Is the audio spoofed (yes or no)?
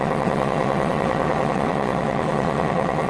yes